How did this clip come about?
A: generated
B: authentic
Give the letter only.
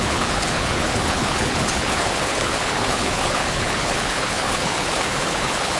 A